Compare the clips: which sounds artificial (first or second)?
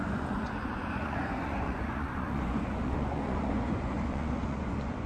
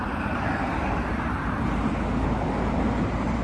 first